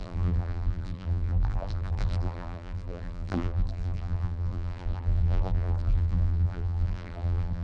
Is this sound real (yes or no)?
no